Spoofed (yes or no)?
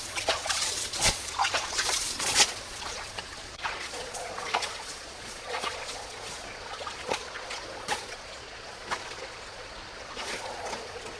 yes